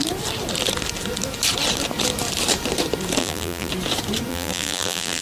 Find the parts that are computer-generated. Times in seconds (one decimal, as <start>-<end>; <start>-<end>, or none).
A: 3.2-3.7; 4.3-5.2